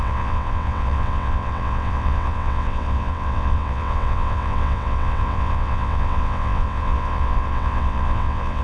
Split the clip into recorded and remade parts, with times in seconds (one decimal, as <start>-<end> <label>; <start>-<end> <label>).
0.0-8.6 remade